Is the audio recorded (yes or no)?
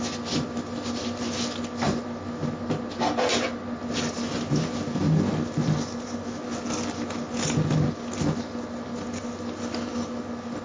yes